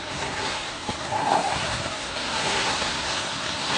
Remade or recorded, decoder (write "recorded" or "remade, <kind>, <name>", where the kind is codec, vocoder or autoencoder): remade, codec, SNAC